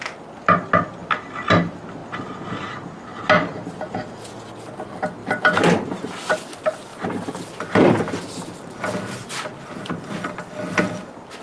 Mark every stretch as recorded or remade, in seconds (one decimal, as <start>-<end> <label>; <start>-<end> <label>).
0.0-5.2 recorded; 5.2-6.1 remade; 6.1-6.9 recorded; 6.9-10.1 remade; 10.1-11.4 recorded